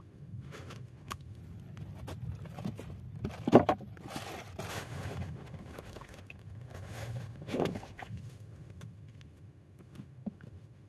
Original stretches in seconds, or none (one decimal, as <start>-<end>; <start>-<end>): 1.4-4.7